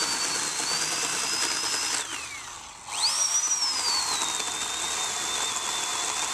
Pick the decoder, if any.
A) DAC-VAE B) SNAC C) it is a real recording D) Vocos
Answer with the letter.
C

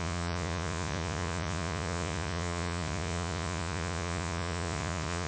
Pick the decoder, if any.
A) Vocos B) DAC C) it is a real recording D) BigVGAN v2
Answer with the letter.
A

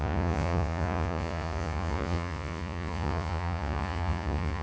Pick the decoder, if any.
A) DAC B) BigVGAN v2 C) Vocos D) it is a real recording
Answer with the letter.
C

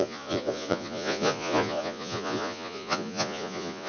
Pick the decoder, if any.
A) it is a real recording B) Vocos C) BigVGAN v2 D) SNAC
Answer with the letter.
B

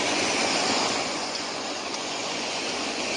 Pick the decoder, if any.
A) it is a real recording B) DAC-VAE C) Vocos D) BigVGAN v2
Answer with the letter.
C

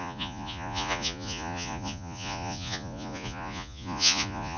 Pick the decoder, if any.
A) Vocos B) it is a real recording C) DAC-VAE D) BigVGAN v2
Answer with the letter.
A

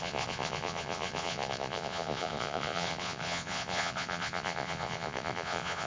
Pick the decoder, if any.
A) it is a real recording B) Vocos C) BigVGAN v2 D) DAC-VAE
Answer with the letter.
B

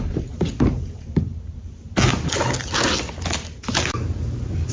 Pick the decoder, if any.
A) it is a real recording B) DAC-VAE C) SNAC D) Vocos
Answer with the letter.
A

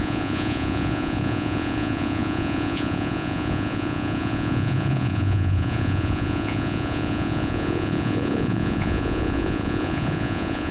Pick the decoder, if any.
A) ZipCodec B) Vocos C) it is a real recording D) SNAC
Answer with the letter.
B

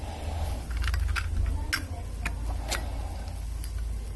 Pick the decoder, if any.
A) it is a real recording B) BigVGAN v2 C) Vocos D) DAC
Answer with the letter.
A